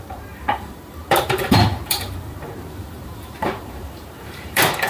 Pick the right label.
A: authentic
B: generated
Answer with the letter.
B